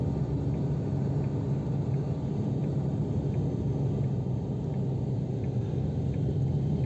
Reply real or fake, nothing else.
real